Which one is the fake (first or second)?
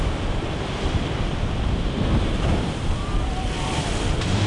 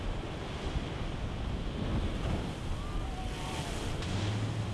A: first